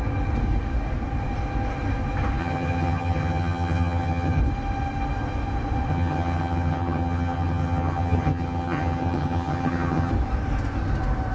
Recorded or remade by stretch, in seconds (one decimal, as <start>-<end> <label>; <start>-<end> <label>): 0.0-2.4 recorded; 2.4-4.4 remade; 4.4-5.9 recorded; 5.9-10.1 remade; 10.1-11.3 recorded